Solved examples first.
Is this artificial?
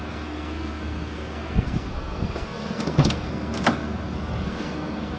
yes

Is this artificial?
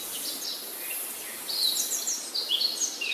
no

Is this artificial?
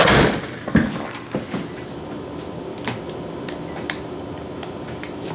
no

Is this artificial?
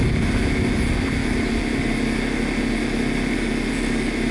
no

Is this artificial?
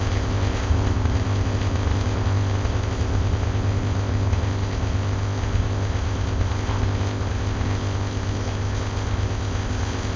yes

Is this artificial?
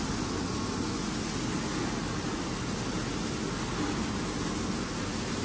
no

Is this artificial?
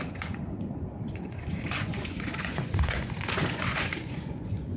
yes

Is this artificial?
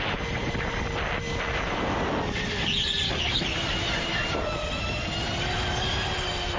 no